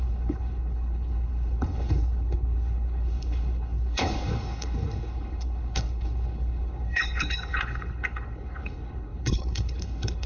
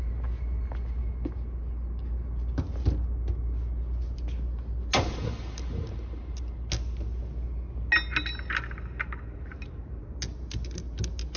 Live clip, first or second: second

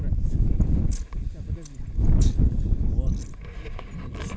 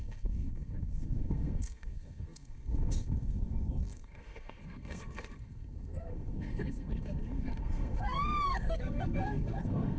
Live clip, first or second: first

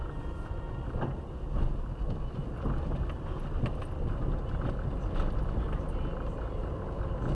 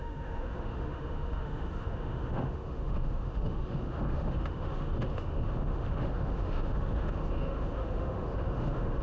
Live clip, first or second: first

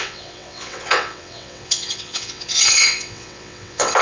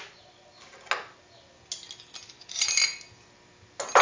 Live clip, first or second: second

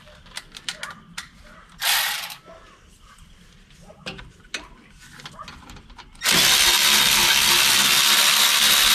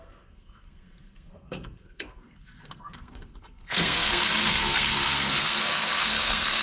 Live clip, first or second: first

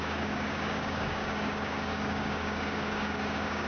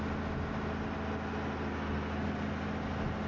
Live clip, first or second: second